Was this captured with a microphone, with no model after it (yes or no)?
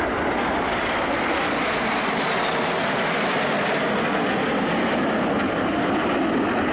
yes